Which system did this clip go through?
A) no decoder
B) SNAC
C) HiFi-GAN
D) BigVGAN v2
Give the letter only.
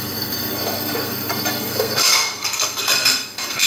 B